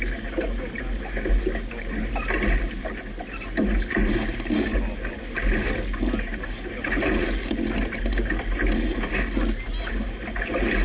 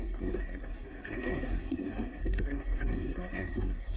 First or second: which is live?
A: first